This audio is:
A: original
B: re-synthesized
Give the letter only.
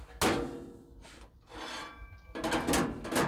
A